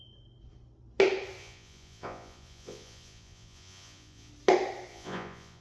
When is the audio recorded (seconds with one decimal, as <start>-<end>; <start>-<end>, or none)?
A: 0.0-1.4; 4.3-4.9